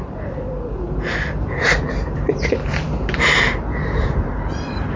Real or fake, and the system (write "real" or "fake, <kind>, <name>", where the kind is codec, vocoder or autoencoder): fake, vocoder, BigVGAN v2